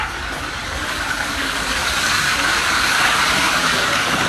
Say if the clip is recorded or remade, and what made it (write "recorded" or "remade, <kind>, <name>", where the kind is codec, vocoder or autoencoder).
remade, codec, DAC